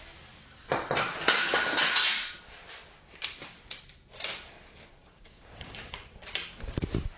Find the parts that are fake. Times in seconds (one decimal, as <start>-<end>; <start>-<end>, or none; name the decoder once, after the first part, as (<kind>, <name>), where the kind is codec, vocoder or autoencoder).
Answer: 5.0-6.1 (codec, DAC)